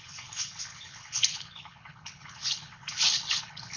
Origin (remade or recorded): remade